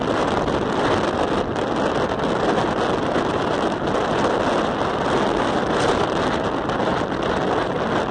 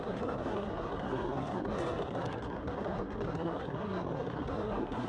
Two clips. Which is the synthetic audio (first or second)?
second